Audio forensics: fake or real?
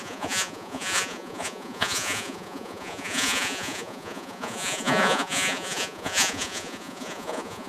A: fake